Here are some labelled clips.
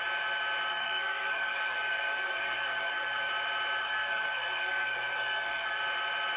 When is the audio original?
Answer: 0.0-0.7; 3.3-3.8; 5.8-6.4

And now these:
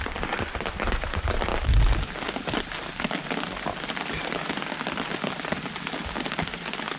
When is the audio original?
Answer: 1.5-4.7

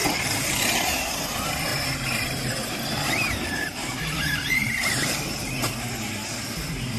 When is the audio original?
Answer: 0.0-1.7; 5.7-7.0

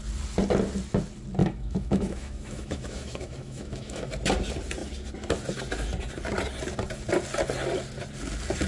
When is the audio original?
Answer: 0.0-1.4; 4.1-8.7

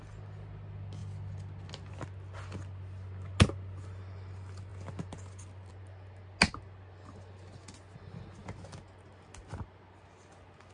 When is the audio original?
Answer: 0.0-10.7

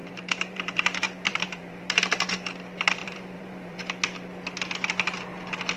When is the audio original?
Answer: 1.8-3.0; 3.8-5.8